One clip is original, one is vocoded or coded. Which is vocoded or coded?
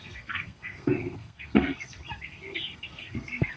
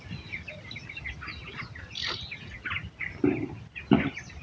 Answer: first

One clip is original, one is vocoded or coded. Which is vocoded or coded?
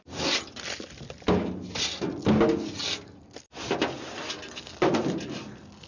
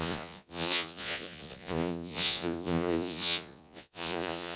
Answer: second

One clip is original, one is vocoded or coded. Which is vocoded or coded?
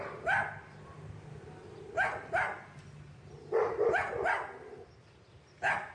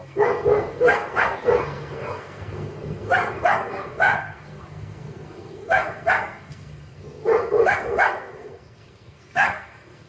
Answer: second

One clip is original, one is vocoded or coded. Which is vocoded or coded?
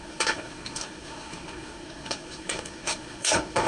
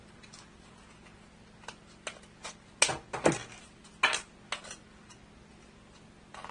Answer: first